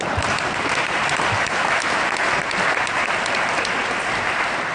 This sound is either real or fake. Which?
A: real